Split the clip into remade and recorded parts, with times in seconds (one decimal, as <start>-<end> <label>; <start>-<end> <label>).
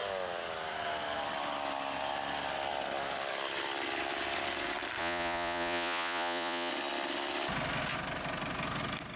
0.0-5.0 recorded; 5.0-6.7 remade; 6.7-9.2 recorded